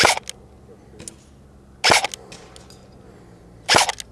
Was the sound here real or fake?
real